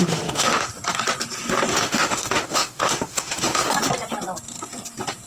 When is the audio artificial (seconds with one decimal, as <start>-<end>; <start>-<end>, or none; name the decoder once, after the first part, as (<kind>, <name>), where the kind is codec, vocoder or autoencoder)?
0.0-0.7 (autoencoder, DAC-VAE); 1.7-3.7